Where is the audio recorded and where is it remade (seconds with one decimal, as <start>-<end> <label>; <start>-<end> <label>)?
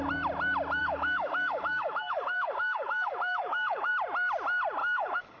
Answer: 0.0-0.8 recorded; 0.8-3.9 remade; 3.9-4.8 recorded; 4.8-5.4 remade